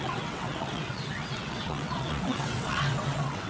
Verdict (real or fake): fake